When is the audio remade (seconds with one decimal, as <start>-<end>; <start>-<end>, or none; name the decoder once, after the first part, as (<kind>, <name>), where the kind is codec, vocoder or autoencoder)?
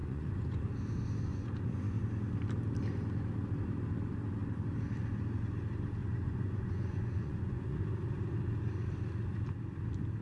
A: 0.0-0.7 (vocoder, Vocos); 1.3-2.0; 6.0-7.8